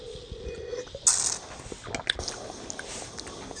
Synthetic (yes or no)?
no